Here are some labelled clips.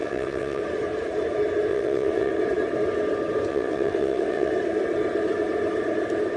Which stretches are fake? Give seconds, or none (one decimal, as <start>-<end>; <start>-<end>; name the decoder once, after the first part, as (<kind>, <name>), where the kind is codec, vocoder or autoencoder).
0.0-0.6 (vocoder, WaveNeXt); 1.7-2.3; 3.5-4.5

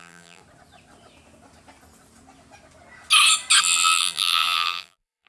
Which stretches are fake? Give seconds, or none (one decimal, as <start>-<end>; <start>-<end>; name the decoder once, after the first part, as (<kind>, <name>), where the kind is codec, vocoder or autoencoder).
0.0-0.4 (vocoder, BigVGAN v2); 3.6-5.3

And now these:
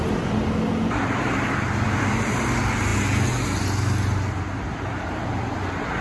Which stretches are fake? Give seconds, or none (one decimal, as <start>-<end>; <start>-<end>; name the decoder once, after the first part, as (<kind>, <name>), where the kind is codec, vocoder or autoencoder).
none

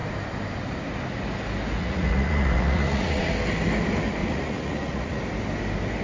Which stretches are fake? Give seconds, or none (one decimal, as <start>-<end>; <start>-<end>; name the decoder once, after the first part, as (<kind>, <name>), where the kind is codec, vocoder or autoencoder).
1.8-3.3 (vocoder, Vocos); 4.2-5.2

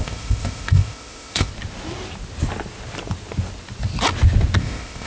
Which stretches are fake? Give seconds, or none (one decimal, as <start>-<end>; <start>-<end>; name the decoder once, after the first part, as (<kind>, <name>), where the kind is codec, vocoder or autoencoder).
0.0-1.5 (codec, ZipCodec); 4.6-5.1

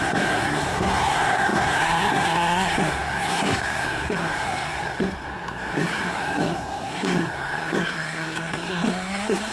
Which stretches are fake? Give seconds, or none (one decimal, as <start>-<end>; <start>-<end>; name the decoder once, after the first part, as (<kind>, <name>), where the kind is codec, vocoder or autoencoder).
0.0-9.5 (codec, SNAC)

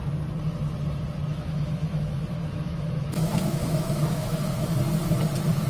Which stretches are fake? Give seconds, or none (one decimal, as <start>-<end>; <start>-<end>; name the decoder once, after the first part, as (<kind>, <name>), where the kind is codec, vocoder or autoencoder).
1.3-4.7 (autoencoder, DAC-VAE)